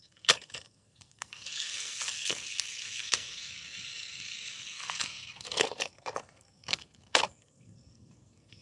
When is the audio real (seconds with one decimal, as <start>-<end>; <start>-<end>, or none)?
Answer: none